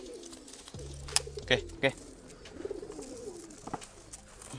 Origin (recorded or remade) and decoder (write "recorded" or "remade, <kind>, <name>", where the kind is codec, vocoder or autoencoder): recorded